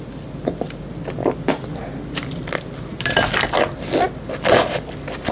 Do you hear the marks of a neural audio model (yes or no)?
no